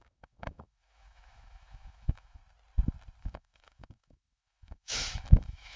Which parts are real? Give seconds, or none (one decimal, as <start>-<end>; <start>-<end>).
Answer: 2.4-3.2

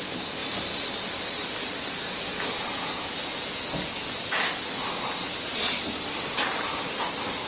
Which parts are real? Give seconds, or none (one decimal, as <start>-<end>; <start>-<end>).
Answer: 0.0-7.5

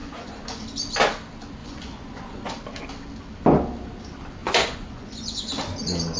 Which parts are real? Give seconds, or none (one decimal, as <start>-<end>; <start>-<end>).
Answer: 0.6-1.6; 2.5-4.4; 5.5-6.2

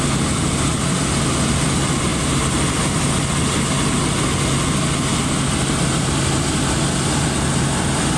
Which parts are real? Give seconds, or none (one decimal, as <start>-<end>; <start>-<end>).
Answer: 0.0-2.1; 3.1-8.2

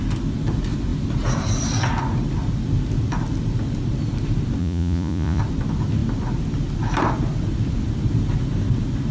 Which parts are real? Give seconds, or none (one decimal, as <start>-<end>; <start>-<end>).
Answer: 0.0-4.6; 5.4-9.1

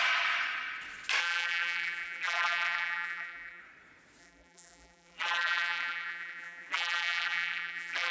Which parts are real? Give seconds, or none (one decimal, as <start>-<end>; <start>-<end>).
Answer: 0.0-1.2; 3.6-4.2